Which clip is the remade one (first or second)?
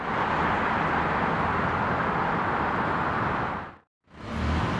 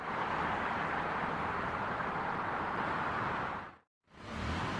second